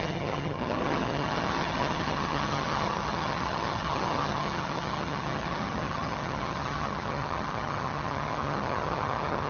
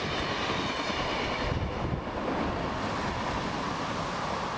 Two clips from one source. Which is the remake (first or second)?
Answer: first